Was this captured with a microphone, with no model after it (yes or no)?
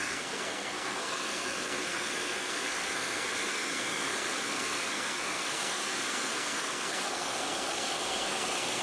no